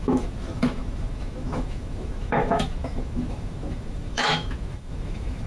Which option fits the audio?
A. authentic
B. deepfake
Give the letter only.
B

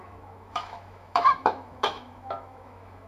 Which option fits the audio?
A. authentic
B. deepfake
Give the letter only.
B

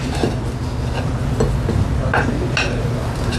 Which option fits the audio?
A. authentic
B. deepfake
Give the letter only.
A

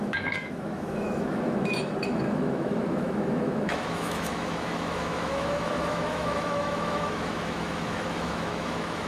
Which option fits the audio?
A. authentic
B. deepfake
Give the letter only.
B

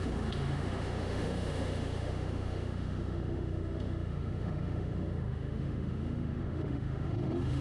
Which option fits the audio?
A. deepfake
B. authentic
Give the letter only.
A